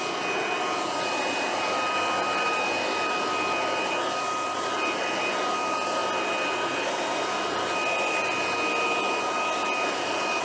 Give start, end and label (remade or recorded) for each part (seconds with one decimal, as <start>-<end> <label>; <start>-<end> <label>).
0.0-10.4 recorded